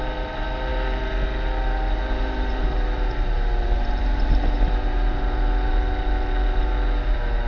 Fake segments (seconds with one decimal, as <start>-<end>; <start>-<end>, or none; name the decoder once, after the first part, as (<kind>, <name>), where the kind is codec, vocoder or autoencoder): 0.0-7.5 (vocoder, BigVGAN v2)